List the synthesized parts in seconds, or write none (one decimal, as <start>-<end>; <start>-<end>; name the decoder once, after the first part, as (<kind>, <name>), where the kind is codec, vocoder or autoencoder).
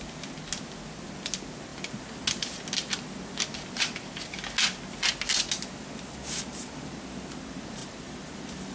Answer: 7.8-8.7 (vocoder, BigVGAN v2)